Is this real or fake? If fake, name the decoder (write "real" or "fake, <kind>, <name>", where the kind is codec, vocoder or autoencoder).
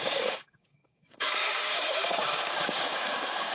fake, codec, DAC